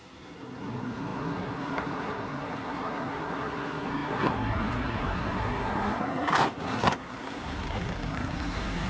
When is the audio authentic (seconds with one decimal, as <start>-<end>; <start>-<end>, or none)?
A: none